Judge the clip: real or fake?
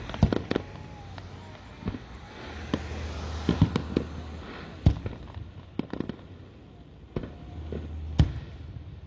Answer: real